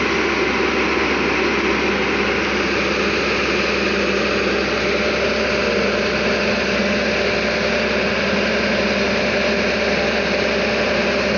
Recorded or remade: recorded